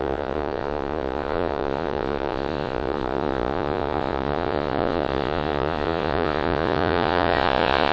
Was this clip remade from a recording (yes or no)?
yes